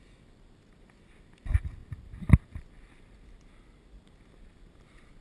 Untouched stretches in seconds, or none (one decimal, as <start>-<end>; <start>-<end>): 0.0-1.8; 2.7-5.2